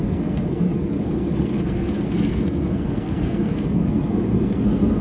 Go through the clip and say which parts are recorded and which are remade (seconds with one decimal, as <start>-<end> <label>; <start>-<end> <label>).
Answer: 0.0-5.0 remade